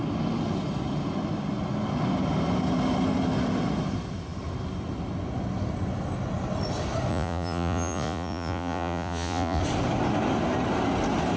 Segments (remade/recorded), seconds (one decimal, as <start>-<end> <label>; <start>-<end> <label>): 0.0-7.1 recorded; 7.1-9.6 remade; 9.6-11.4 recorded